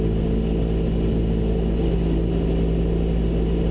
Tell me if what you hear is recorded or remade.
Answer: recorded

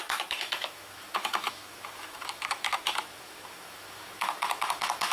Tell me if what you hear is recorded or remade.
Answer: remade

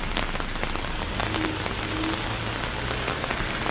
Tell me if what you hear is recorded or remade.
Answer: recorded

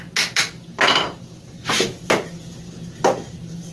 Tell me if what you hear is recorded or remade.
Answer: recorded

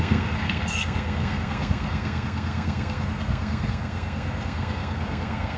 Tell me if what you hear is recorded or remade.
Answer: remade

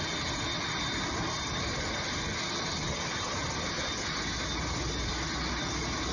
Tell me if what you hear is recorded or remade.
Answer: recorded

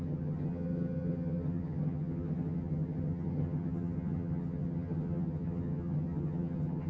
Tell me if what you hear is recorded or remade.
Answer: remade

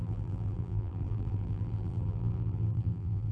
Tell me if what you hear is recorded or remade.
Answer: remade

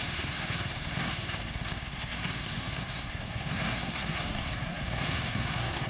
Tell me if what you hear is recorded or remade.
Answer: remade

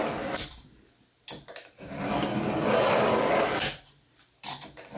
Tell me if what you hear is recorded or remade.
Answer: recorded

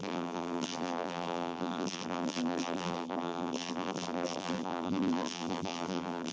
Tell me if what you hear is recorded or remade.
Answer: remade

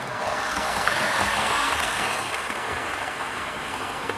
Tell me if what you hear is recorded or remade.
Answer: remade